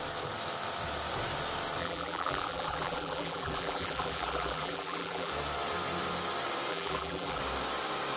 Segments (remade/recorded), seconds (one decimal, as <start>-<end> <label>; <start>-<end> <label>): 0.0-1.8 recorded; 1.8-5.3 remade; 5.3-6.7 recorded; 6.7-7.4 remade; 7.4-8.2 recorded